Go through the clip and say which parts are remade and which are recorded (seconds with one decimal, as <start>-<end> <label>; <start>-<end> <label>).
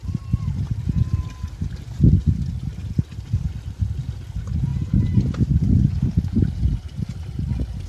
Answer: 0.0-7.9 recorded